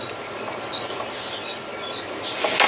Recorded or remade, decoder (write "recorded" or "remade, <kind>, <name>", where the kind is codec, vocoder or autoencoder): recorded